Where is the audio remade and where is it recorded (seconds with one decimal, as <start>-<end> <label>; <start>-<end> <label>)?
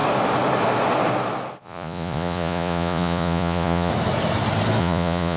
0.0-1.6 recorded; 1.6-3.9 remade; 3.9-4.8 recorded; 4.8-5.4 remade